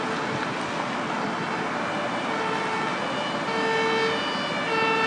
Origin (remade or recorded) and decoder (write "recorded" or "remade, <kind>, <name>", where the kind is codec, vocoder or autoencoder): recorded